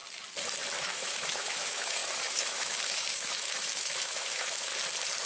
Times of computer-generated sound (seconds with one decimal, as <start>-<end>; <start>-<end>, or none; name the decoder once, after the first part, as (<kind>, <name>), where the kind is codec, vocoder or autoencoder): 0.8-4.7 (autoencoder, DAC-VAE)